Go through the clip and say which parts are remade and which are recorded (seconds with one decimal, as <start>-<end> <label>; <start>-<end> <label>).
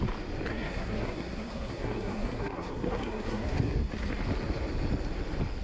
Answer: 0.0-0.5 recorded; 0.5-3.9 remade; 3.9-5.6 recorded